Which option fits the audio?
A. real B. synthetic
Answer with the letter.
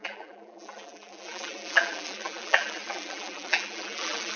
B